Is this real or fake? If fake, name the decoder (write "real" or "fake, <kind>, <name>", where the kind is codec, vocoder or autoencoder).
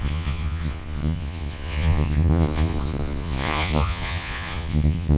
fake, vocoder, Vocos